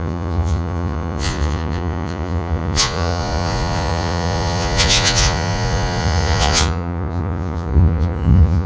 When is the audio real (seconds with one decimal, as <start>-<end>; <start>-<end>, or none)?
none